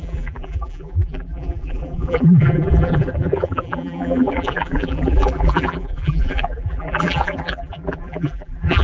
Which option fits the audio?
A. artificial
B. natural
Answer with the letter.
A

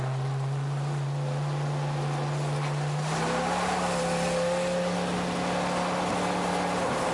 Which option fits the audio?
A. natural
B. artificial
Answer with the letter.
A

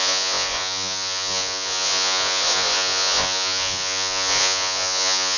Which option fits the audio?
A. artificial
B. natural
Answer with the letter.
A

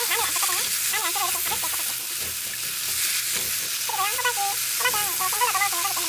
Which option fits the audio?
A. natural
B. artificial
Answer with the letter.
A